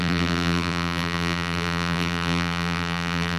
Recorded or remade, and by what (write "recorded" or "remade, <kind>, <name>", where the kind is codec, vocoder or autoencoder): remade, vocoder, BigVGAN v2